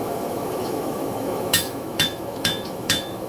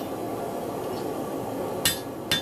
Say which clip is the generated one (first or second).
first